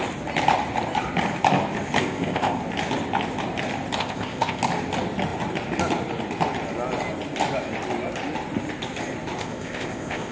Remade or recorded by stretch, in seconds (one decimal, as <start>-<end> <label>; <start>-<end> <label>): 0.0-2.0 recorded; 2.0-2.6 remade; 2.6-4.0 recorded; 4.0-4.6 remade; 4.6-9.4 recorded; 9.4-10.3 remade